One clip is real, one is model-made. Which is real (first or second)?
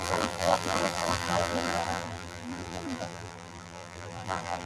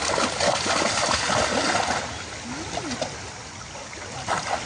second